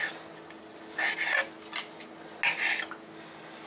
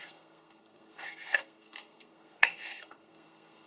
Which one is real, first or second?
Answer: first